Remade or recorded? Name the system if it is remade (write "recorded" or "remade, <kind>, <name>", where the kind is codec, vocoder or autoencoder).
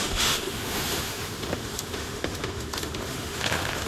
remade, autoencoder, DAC-VAE